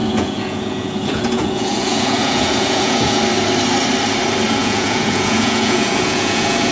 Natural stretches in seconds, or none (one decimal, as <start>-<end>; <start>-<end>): 3.2-4.6